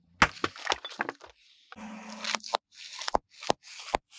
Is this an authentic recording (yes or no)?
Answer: yes